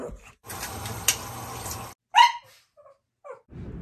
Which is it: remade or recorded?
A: recorded